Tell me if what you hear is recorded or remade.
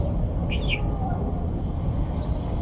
recorded